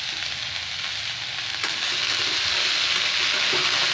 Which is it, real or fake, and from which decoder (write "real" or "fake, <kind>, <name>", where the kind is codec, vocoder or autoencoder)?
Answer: real